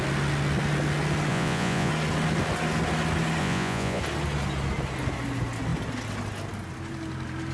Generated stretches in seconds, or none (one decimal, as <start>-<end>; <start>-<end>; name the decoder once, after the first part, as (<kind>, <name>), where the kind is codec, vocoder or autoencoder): 1.3-1.9 (vocoder, Vocos); 3.4-4.0